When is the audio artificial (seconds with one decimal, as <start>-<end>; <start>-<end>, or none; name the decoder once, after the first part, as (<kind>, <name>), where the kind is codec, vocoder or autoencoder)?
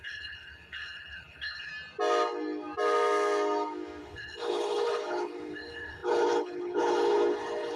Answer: 0.0-1.7 (codec, HILCodec); 4.0-7.8